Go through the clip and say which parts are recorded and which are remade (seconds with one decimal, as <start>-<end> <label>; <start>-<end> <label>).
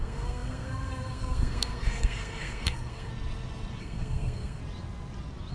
0.0-3.1 remade; 3.1-3.8 recorded; 3.8-4.6 remade; 4.6-5.5 recorded